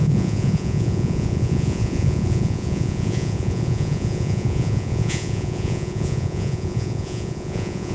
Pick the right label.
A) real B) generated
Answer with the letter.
B